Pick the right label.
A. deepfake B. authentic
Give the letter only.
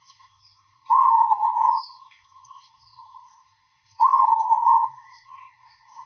A